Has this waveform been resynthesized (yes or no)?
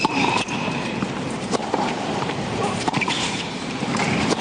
yes